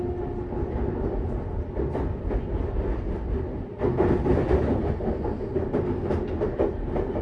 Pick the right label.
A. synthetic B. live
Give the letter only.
B